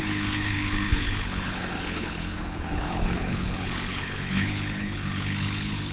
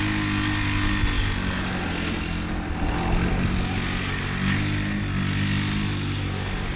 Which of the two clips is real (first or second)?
second